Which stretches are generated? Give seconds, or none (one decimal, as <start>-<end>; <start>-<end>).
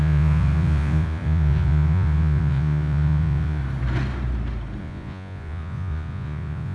0.0-3.6; 4.8-6.7